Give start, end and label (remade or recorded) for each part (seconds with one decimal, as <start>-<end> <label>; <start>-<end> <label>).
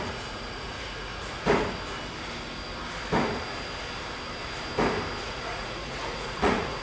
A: 0.0-1.1 remade; 1.1-5.2 recorded; 5.2-6.8 remade